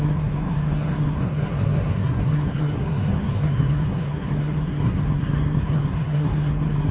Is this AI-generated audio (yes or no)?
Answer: yes